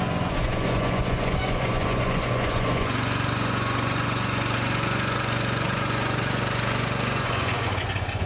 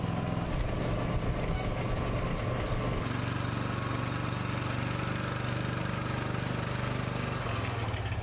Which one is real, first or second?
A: second